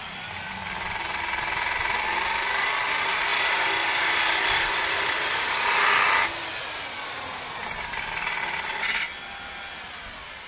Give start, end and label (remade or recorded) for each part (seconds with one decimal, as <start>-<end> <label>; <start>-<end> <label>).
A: 0.0-10.5 recorded

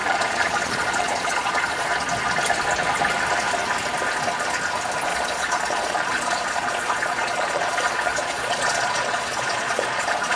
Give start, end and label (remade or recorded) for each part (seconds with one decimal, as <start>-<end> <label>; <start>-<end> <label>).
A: 0.0-1.9 remade; 1.9-5.1 recorded; 5.1-10.4 remade

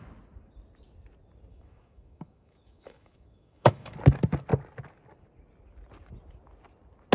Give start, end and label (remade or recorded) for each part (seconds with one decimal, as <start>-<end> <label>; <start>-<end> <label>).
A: 0.0-1.5 recorded; 1.5-3.9 remade; 3.9-7.1 recorded

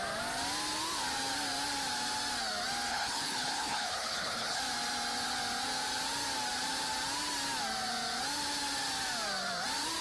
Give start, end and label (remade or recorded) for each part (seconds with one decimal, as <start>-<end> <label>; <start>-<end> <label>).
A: 0.0-2.9 recorded; 2.9-4.6 remade; 4.6-10.0 recorded

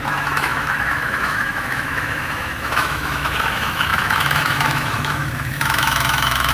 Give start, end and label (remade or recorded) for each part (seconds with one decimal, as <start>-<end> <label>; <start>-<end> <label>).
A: 0.0-6.5 remade

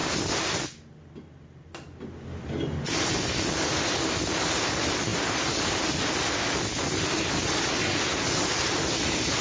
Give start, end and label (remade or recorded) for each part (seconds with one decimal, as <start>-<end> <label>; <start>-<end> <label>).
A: 0.0-9.4 recorded

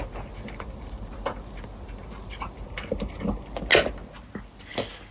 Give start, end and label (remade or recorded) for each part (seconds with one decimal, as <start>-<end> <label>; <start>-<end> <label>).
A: 0.0-5.1 recorded

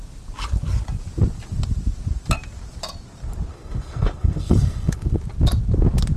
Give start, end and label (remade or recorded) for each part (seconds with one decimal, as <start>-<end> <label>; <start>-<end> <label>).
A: 0.0-3.5 recorded; 3.5-5.2 remade; 5.2-6.2 recorded